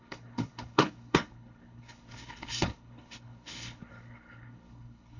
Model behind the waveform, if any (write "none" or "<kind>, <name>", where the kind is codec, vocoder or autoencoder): codec, HILCodec